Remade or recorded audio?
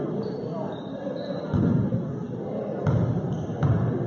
remade